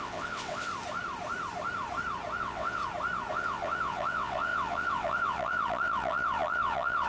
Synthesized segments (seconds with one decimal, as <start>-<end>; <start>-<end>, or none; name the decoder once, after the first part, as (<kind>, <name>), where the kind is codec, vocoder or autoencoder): 0.0-0.7 (vocoder, WaveNeXt); 2.4-2.8; 3.3-7.1